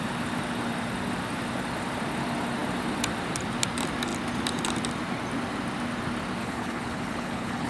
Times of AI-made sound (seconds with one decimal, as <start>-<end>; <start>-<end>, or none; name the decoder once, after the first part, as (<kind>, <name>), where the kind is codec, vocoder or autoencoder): 6.4-7.7 (codec, HILCodec)